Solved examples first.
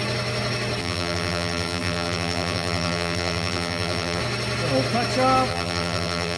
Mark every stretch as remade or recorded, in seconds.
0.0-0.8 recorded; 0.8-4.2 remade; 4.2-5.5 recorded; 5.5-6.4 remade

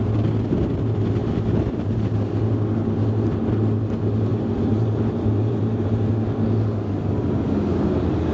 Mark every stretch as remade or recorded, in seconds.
0.0-1.2 recorded; 1.2-2.2 remade; 2.2-4.3 recorded; 4.3-6.1 remade; 6.1-8.3 recorded

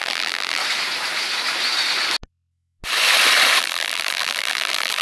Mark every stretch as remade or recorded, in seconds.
0.0-0.6 remade; 0.6-3.6 recorded; 3.6-5.0 remade

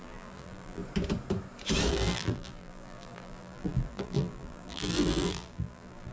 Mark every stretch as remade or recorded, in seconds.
0.0-0.8 remade; 0.8-1.9 recorded; 1.9-6.1 remade

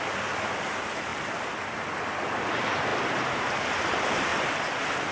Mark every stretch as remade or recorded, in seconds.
0.0-2.9 remade; 2.9-3.4 recorded; 3.4-4.3 remade; 4.3-5.1 recorded

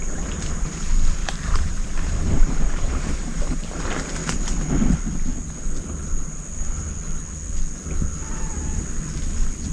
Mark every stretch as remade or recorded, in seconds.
0.0-1.2 recorded; 1.2-3.8 remade; 3.8-9.7 recorded

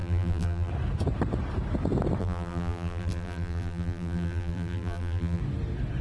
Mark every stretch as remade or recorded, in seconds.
0.0-0.7 remade; 0.7-2.2 recorded; 2.2-5.4 remade; 5.4-6.0 recorded